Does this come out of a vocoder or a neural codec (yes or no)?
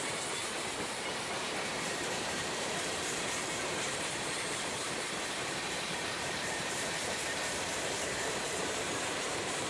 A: yes